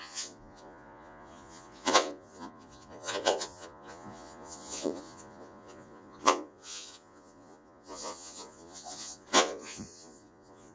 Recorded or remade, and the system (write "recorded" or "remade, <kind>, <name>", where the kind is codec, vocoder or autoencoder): remade, vocoder, Vocos